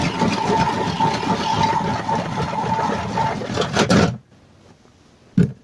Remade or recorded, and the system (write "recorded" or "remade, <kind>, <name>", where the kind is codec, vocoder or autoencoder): recorded